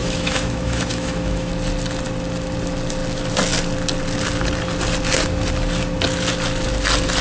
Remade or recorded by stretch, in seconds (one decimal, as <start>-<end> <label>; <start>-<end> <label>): 0.0-1.5 remade; 1.5-7.2 recorded